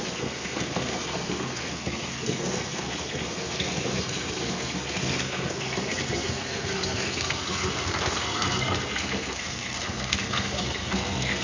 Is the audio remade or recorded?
remade